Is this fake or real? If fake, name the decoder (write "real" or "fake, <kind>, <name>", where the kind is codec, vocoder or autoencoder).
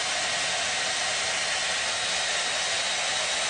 real